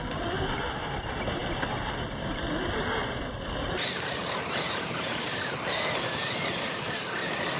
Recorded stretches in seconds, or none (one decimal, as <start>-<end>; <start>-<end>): 0.0-3.0; 5.7-7.6